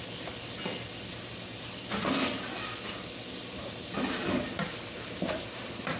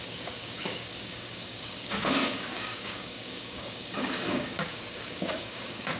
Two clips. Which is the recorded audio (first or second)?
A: first